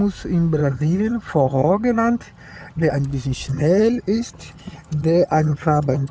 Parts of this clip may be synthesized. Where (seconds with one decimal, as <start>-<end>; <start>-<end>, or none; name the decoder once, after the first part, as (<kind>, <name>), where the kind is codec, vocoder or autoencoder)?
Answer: 0.6-2.9 (vocoder, HiFi-GAN); 3.5-6.1